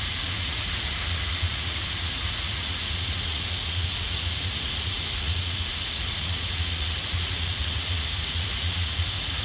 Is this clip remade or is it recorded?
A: remade